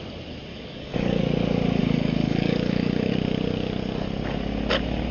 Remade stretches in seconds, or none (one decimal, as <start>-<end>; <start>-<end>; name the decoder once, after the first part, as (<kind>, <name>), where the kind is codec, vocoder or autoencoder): 0.5-1.2 (codec, DAC); 1.8-3.1

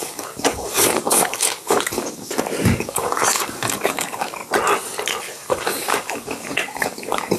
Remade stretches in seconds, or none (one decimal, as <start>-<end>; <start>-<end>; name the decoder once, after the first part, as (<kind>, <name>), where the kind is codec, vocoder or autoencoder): 0.0-4.4 (codec, DAC); 5.2-7.4

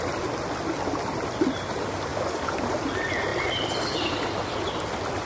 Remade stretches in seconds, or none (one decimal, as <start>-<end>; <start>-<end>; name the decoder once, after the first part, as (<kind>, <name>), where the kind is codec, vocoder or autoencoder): 2.1-2.6 (codec, DAC)

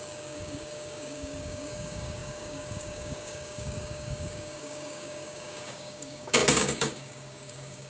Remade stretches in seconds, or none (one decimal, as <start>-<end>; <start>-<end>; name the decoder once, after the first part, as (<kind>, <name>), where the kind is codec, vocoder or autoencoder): 0.0-7.9 (codec, DAC)

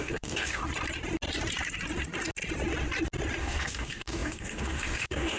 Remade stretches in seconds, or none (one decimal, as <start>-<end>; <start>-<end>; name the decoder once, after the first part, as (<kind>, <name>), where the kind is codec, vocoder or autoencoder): 0.0-0.6 (codec, DAC); 3.4-5.4

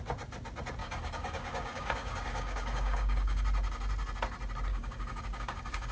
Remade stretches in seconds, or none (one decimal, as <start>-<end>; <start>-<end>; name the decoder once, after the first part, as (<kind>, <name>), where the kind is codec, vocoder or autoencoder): 0.8-3.4 (codec, DAC); 4.7-5.9

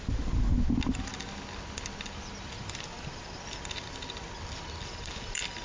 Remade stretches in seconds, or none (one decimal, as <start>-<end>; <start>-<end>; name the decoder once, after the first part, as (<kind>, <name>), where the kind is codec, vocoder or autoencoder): none